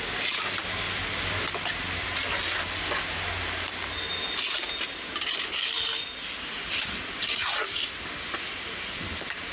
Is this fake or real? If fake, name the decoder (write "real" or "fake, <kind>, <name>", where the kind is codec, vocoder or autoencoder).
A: real